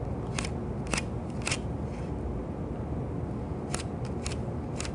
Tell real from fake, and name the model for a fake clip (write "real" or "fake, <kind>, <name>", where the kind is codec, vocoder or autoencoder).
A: real